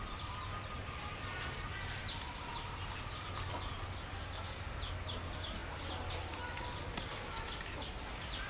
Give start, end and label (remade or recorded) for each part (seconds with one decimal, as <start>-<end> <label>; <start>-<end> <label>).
0.0-8.5 recorded